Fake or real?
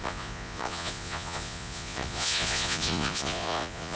fake